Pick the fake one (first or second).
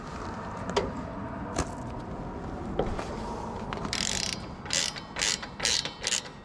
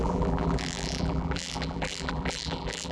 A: second